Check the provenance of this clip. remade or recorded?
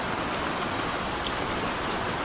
recorded